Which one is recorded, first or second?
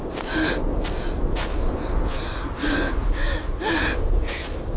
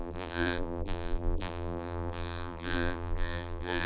first